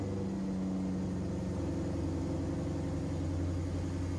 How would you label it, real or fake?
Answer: real